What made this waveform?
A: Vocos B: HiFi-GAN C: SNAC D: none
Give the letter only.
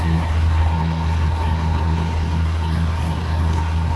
C